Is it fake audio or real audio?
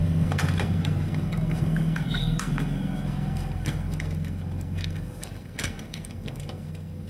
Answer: fake